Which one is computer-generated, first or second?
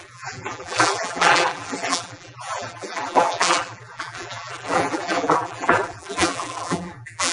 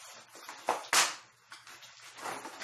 first